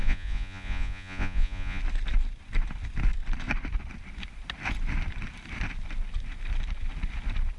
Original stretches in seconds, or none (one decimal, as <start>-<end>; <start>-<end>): 1.8-7.6